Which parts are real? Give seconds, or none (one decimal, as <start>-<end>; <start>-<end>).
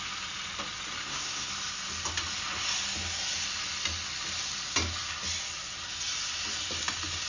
0.0-1.0; 1.5-7.3